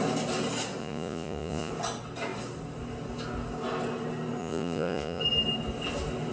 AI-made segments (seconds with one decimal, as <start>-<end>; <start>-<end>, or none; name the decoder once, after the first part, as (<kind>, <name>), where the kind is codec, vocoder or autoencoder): 0.8-1.7 (vocoder, Vocos); 4.4-5.2